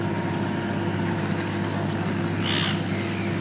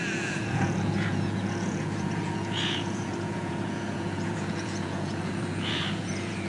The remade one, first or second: second